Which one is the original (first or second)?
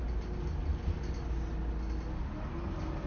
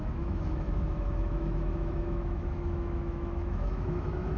first